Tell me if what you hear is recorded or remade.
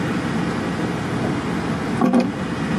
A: recorded